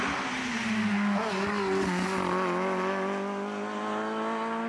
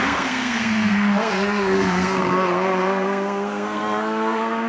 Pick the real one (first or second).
first